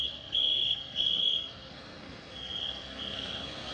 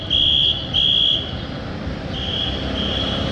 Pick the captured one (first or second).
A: second